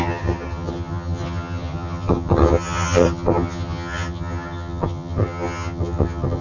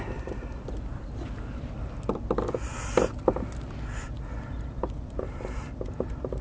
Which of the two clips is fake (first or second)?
first